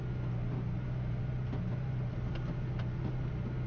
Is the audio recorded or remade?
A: recorded